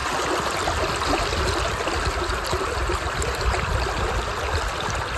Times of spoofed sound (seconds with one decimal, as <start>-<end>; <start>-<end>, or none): none